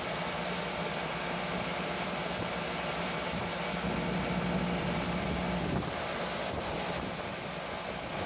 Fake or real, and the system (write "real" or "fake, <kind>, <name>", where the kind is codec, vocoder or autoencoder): real